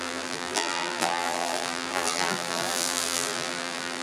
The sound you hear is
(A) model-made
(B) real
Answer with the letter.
A